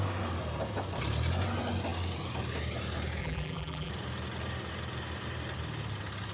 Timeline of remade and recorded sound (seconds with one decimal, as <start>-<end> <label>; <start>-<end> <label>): 0.0-3.2 recorded; 3.2-3.9 remade; 3.9-6.3 recorded